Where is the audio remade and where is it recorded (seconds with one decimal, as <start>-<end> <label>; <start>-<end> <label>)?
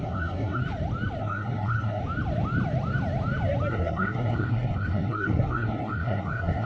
0.0-0.6 remade; 0.6-1.2 recorded; 1.2-2.0 remade; 2.0-3.7 recorded; 3.7-6.7 remade